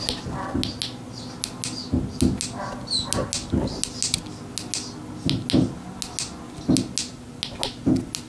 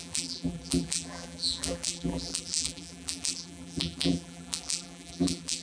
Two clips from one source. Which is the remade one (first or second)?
second